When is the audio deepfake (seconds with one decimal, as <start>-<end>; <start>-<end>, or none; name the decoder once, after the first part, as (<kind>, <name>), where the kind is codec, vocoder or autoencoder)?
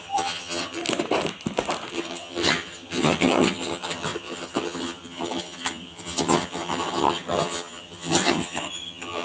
0.0-0.8 (vocoder, HiFi-GAN); 1.9-9.2